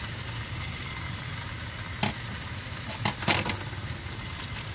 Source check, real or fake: real